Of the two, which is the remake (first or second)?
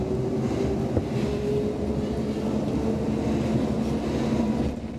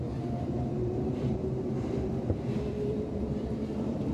second